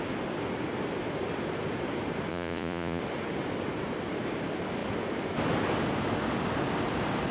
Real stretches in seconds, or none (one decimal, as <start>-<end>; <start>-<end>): 0.0-2.3; 3.0-7.3